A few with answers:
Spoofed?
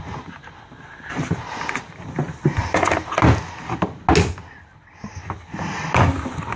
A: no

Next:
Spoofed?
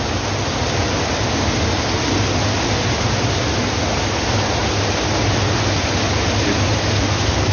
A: no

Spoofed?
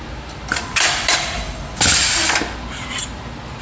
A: no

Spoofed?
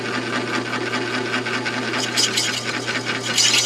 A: no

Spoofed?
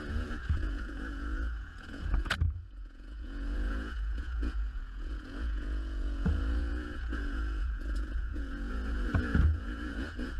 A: yes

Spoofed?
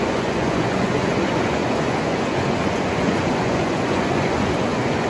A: yes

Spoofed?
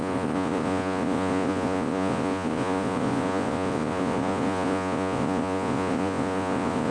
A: yes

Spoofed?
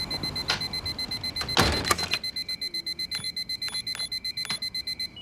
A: no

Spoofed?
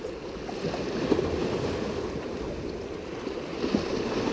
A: no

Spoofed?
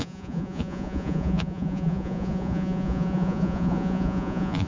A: yes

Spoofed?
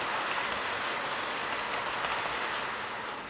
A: no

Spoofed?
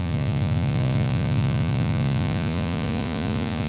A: yes